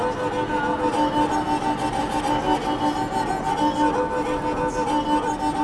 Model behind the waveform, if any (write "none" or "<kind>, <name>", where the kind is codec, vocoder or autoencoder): none